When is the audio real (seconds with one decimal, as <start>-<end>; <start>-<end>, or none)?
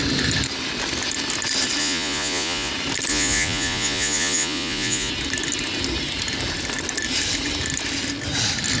0.0-1.8; 2.7-3.1; 5.1-8.8